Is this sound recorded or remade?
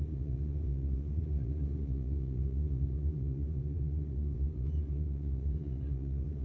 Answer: remade